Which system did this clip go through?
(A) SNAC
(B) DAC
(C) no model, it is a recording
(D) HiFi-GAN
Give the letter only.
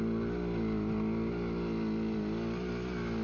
C